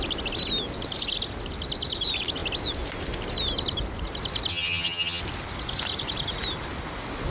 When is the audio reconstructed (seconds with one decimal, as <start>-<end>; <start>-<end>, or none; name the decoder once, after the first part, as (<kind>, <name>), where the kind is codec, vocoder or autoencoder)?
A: 4.5-5.2 (vocoder, HiFi-GAN)